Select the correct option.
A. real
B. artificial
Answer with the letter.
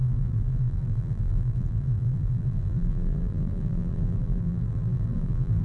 B